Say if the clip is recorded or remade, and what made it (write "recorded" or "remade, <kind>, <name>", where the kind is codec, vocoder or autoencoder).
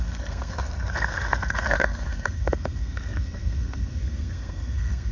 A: remade, codec, SNAC